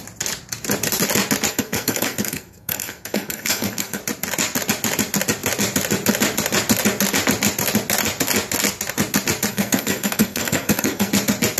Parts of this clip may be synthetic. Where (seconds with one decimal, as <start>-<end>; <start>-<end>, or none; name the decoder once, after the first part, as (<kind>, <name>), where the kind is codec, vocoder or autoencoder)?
1.5-4.0 (codec, SNAC); 9.5-11.1